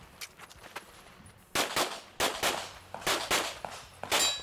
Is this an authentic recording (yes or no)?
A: yes